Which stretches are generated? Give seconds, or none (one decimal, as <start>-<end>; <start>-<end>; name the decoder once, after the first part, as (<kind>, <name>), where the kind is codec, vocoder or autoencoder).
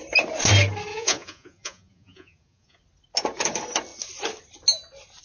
0.9-2.8 (vocoder, Vocos)